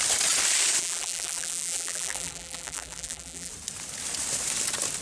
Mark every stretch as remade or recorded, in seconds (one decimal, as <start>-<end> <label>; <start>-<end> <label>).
0.0-0.8 recorded; 0.8-3.5 remade; 3.5-5.0 recorded